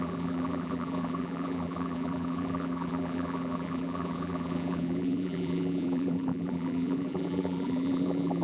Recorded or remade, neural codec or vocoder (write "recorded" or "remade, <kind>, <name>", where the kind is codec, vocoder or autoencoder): remade, vocoder, BigVGAN v2